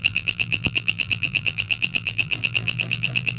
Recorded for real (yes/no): no